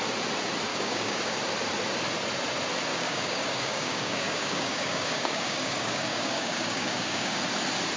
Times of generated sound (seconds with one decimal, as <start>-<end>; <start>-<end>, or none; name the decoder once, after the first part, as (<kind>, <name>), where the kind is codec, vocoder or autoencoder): 0.7-1.4 (codec, DAC); 2.9-7.4